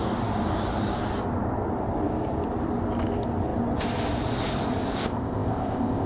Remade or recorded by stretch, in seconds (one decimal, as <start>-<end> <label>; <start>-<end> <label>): 0.0-4.9 recorded; 4.9-6.1 remade